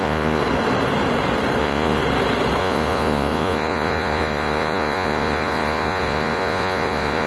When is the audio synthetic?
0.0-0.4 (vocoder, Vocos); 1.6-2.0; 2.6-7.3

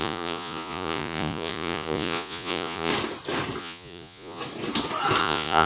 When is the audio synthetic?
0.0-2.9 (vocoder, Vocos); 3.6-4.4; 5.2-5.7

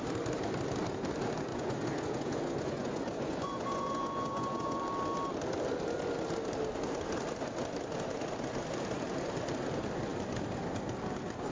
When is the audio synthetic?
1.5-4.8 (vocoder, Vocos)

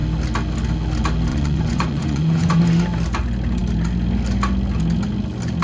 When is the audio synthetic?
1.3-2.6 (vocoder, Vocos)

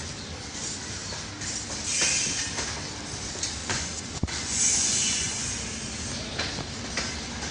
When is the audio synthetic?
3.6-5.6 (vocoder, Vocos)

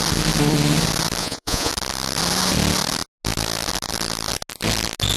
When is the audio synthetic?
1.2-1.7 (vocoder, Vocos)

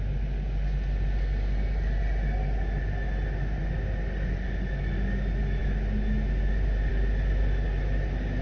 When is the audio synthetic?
none

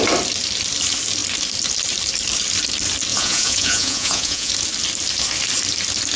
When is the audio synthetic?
3.1-4.5 (vocoder, Vocos)